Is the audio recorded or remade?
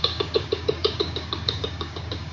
remade